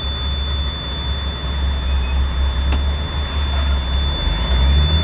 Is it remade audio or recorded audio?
recorded